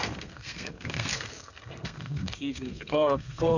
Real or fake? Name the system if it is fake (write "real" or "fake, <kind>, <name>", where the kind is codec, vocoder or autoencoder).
fake, codec, SNAC